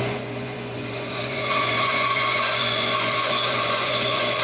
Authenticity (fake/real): fake